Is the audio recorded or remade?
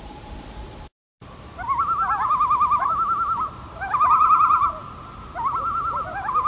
recorded